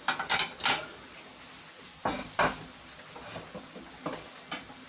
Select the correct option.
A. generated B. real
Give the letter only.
B